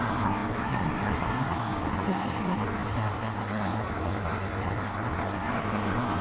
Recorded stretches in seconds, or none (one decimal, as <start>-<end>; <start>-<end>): none